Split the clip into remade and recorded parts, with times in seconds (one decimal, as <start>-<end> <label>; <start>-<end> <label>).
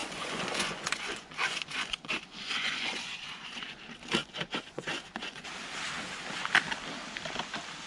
0.0-3.8 remade; 3.8-4.2 recorded; 4.2-5.5 remade; 5.5-7.9 recorded